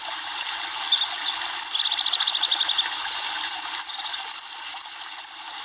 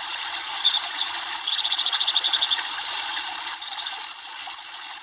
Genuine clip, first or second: first